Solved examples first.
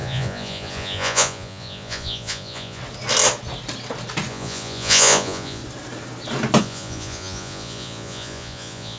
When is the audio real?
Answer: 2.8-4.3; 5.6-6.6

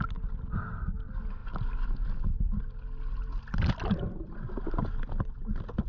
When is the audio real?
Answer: 0.0-5.9

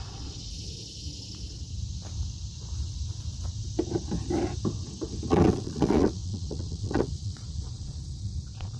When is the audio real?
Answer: 0.5-5.3

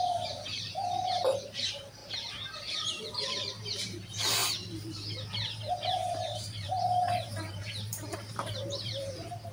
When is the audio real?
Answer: 2.0-2.6

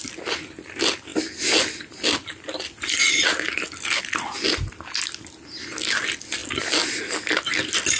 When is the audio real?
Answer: 0.0-8.0

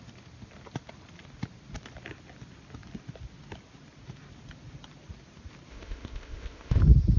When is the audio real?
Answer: 0.0-5.7; 6.8-7.2

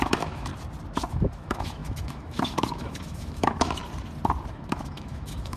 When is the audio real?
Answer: 0.5-1.1; 3.8-4.5

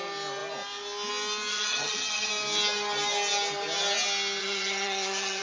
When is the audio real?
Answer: 0.0-1.5; 2.3-4.4